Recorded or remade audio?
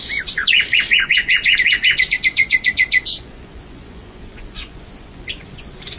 remade